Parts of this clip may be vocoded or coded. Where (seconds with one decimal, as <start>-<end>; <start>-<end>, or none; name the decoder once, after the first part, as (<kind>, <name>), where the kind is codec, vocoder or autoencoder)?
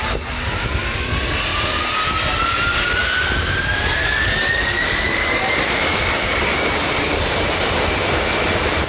4.0-7.2 (codec, DAC)